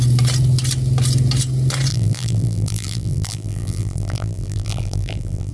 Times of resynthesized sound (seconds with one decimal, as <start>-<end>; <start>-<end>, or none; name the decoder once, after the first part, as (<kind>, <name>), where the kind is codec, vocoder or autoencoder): 1.9-5.5 (vocoder, BigVGAN v2)